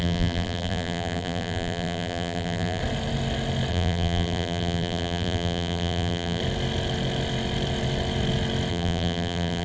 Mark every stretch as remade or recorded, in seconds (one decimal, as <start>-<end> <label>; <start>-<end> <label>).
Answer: 0.0-2.8 remade; 2.8-3.7 recorded; 3.7-6.4 remade; 6.4-8.7 recorded; 8.7-9.6 remade